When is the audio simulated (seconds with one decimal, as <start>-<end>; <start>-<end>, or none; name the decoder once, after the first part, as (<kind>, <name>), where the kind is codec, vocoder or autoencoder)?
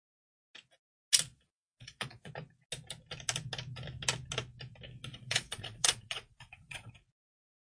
1.3-2.3 (vocoder, Vocos); 5.1-6.9